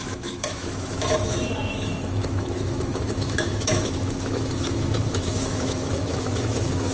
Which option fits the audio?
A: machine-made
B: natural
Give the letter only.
A